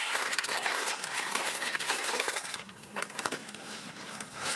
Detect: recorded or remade remade